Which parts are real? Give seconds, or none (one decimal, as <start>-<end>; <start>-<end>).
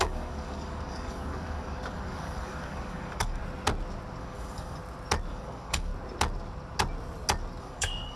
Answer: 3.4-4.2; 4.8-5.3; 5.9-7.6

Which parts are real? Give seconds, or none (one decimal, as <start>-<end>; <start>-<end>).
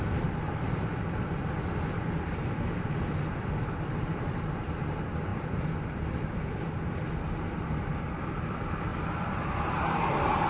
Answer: 0.0-10.5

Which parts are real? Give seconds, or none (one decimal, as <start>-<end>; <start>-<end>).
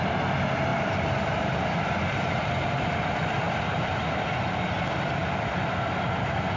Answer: 0.0-0.7; 3.0-6.6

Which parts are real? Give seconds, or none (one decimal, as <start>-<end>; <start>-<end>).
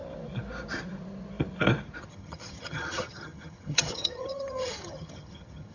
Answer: 0.0-2.1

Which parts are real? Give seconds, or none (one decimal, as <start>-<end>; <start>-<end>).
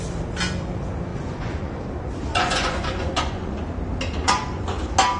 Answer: 0.0-1.1; 1.7-2.3; 3.6-4.2; 4.8-5.2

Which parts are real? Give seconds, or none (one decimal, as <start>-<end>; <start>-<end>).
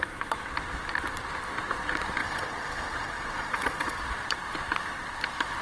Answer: 0.0-2.2; 4.0-5.6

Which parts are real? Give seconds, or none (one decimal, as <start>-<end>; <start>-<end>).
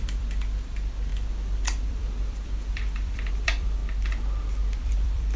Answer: 3.8-4.8